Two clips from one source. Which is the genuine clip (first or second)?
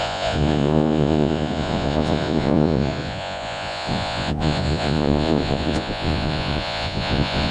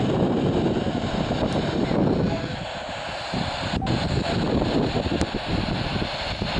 second